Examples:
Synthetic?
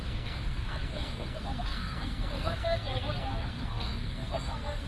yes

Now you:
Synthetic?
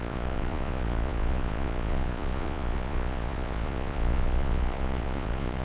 yes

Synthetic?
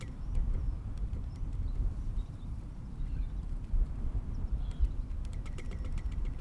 yes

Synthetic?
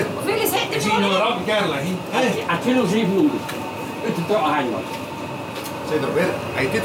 no